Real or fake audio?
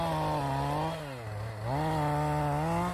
real